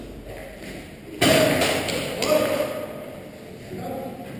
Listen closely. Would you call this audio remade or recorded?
recorded